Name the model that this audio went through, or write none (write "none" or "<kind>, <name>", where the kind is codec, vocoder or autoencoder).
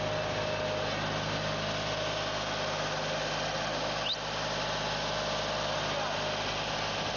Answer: none